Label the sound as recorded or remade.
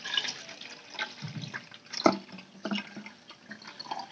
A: recorded